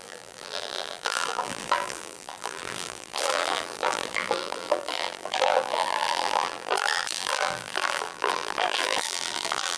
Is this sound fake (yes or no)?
yes